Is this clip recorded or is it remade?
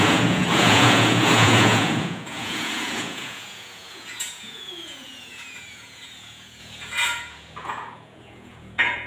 remade